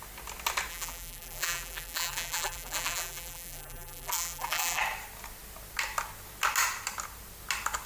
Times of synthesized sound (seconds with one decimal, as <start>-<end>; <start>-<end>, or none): 0.7-4.8

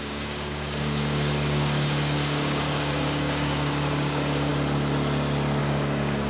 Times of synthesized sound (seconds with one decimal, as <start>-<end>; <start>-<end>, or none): 0.0-4.5; 5.6-6.3

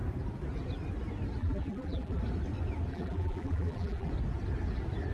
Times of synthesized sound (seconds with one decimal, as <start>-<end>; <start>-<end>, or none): 1.4-2.2; 2.9-4.1

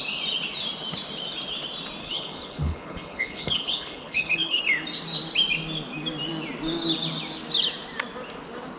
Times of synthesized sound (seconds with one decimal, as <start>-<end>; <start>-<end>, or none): 2.0-4.6

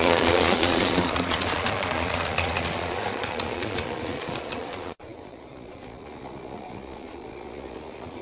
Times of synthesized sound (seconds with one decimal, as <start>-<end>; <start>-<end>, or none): 0.0-8.2

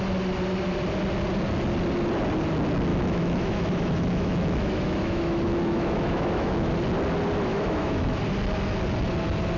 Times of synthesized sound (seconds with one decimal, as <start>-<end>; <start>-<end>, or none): 2.9-6.7; 7.5-8.2